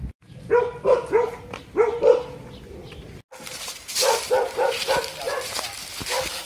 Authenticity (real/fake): real